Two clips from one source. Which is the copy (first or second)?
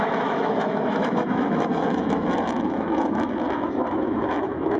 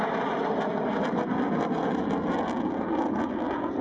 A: first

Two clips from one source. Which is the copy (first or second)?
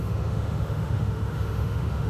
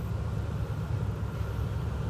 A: first